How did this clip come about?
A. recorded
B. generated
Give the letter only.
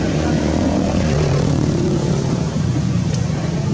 B